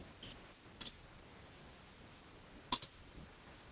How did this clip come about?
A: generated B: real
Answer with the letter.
B